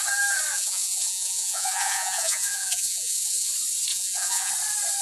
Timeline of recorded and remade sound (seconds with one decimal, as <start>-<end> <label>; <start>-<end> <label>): 0.0-0.5 recorded; 0.5-3.5 remade; 3.5-3.9 recorded; 3.9-4.5 remade; 4.5-5.0 recorded